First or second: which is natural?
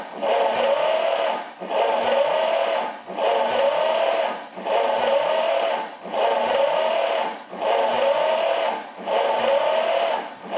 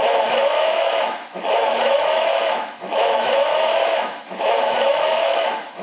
first